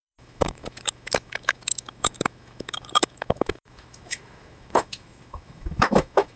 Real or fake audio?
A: fake